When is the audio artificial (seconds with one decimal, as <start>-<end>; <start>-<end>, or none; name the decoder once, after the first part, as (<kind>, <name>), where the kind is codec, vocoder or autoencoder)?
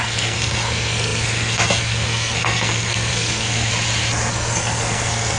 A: 0.0-3.7 (codec, SNAC); 4.3-5.4